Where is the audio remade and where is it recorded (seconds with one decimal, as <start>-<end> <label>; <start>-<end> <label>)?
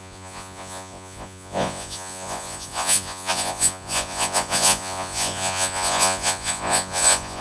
0.0-7.4 remade